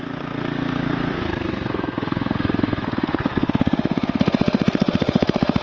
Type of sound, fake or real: fake